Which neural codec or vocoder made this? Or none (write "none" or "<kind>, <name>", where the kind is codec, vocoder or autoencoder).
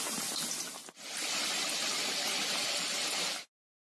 none